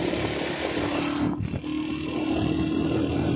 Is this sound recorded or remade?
recorded